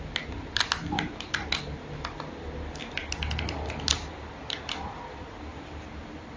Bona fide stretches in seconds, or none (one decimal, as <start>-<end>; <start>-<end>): 0.0-6.4